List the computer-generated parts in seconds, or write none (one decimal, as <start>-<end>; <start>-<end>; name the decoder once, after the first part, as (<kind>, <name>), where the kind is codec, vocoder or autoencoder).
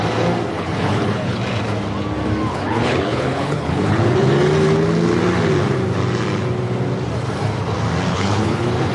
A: 0.5-1.4 (codec, HILCodec); 2.5-4.2; 8.1-8.9